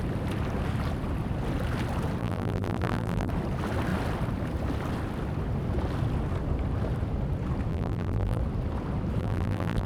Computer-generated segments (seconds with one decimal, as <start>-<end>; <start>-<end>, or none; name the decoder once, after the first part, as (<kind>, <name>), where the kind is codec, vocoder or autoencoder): 2.2-3.3 (vocoder, BigVGAN v2); 7.7-8.4; 9.2-9.9